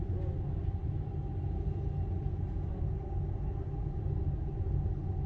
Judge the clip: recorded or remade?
recorded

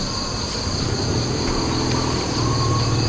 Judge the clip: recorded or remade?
recorded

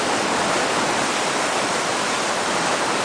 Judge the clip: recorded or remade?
recorded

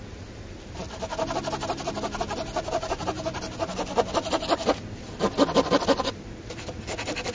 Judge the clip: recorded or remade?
recorded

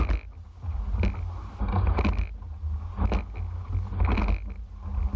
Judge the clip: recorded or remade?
recorded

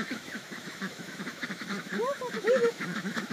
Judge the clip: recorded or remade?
remade